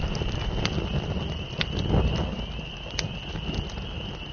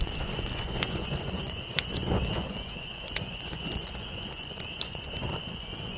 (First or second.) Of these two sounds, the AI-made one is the second